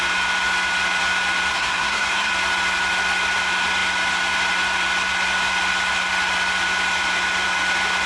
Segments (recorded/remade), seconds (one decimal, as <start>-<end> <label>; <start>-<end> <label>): 0.0-1.5 recorded; 1.5-2.3 remade; 2.3-8.1 recorded